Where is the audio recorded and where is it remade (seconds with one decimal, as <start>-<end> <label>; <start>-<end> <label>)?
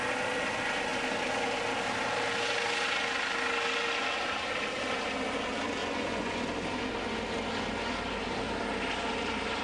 0.0-5.8 recorded; 5.8-6.4 remade; 6.4-9.6 recorded